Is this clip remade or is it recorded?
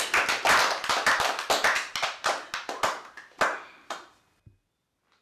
recorded